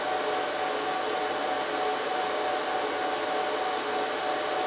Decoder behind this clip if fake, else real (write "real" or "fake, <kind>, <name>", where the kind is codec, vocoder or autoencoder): real